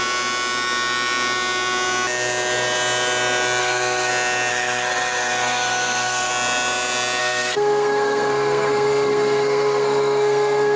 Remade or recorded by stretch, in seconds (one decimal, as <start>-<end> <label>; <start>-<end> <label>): 0.0-3.6 recorded; 3.6-4.1 remade; 4.1-4.5 recorded; 4.5-6.3 remade; 6.3-7.2 recorded; 7.2-10.8 remade